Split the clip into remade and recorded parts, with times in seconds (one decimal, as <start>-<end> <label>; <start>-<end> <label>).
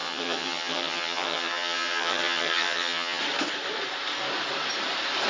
0.0-3.2 remade; 3.2-5.3 recorded